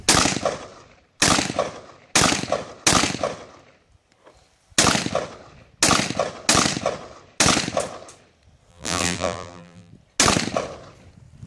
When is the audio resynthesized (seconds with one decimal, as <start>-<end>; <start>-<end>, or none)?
8.7-9.9